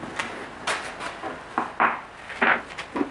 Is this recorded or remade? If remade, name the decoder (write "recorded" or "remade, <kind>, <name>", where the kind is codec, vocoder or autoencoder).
recorded